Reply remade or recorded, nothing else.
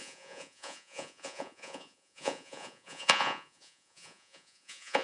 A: remade